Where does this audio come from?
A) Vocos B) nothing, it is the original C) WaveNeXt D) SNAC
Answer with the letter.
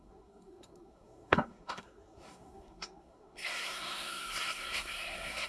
D